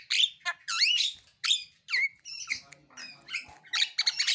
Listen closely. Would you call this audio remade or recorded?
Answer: recorded